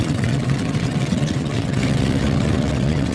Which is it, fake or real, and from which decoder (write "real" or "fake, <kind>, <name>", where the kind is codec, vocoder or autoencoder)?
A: fake, vocoder, WaveNeXt